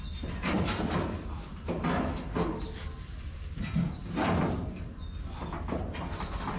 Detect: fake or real real